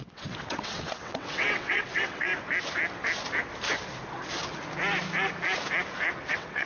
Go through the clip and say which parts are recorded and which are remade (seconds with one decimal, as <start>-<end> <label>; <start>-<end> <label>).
0.0-2.3 remade; 2.3-6.3 recorded; 6.3-6.7 remade